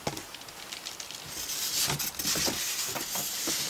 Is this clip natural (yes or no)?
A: yes